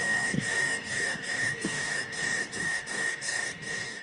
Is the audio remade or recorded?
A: remade